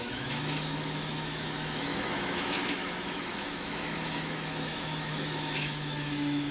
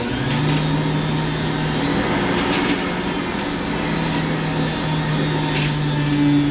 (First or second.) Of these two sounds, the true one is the second